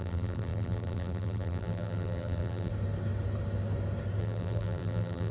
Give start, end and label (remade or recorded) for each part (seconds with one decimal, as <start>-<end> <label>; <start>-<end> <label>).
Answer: 0.0-2.7 remade; 2.7-4.2 recorded; 4.2-5.3 remade